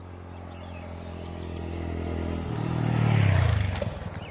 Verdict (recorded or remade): recorded